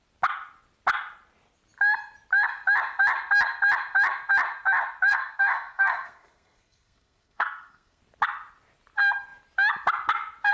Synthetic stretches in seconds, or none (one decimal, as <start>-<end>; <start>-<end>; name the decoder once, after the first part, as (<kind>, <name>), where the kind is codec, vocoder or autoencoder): 5.1-8.0 (codec, SNAC)